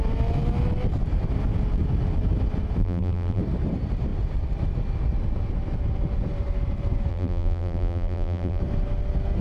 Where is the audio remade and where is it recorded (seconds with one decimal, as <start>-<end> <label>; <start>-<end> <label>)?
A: 0.0-2.8 recorded; 2.8-3.4 remade; 3.4-7.1 recorded; 7.1-8.6 remade; 8.6-9.4 recorded